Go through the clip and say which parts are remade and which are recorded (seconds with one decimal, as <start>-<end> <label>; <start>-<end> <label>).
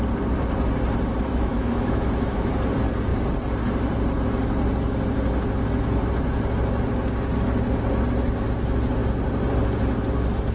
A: 0.0-1.3 recorded; 1.3-2.5 remade; 2.5-10.5 recorded